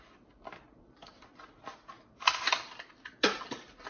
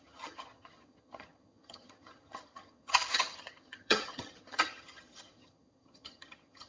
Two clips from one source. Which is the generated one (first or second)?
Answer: second